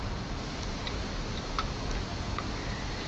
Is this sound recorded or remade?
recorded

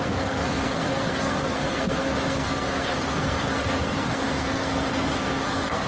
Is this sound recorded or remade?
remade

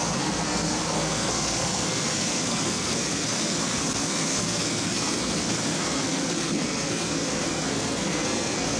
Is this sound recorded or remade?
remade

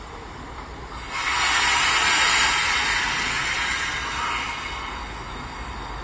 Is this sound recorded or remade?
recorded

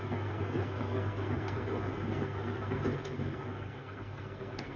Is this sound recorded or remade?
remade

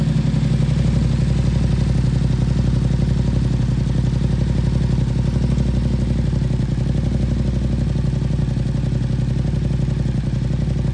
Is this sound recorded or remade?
recorded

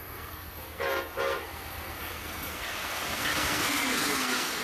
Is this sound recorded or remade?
remade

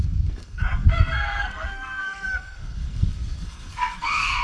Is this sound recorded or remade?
remade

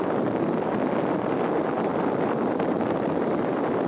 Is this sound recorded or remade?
recorded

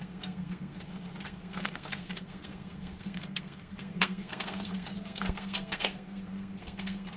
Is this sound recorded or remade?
remade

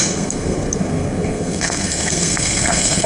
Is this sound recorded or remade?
remade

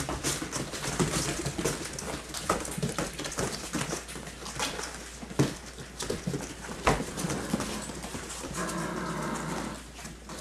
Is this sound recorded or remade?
recorded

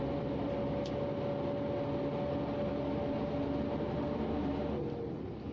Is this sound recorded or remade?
recorded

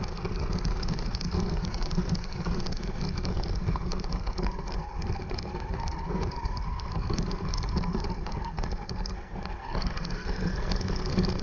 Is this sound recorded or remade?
remade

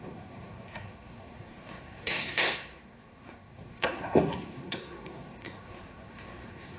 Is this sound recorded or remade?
remade